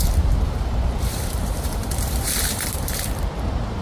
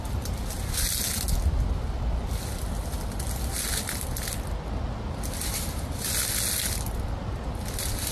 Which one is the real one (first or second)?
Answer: second